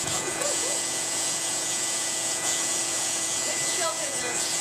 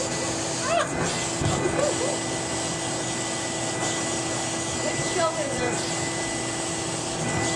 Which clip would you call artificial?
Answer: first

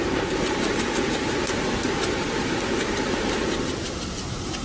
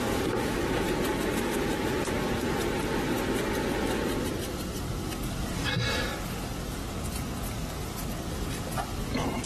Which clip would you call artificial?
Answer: first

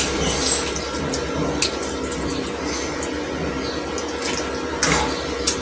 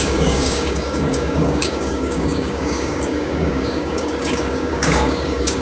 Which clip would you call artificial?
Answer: second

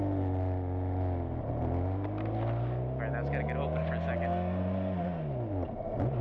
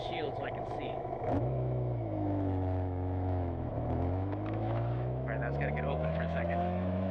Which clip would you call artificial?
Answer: second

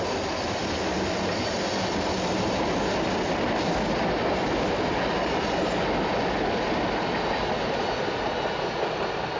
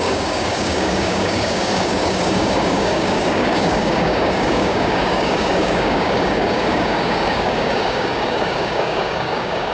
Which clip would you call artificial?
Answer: second